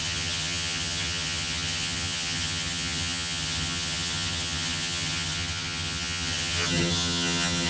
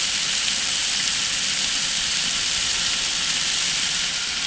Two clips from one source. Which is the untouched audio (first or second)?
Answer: second